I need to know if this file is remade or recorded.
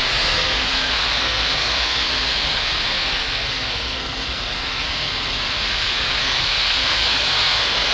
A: remade